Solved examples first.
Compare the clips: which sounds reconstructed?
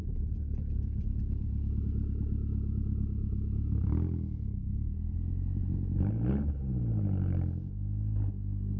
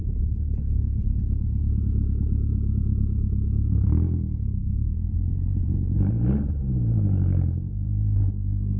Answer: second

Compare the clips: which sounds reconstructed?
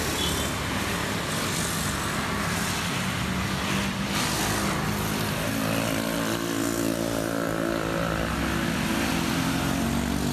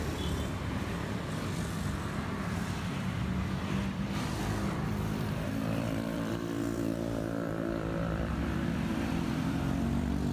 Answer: second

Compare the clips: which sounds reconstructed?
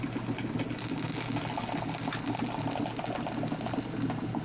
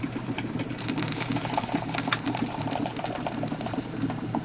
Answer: second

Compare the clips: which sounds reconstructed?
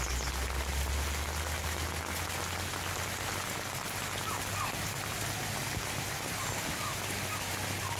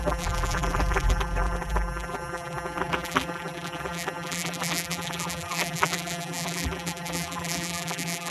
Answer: second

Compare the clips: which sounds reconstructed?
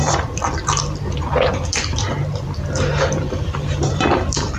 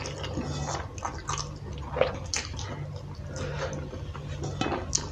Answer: first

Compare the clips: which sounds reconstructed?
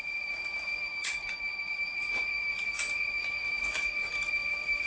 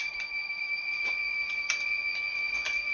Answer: first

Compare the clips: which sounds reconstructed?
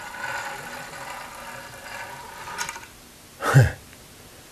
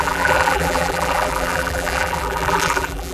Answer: second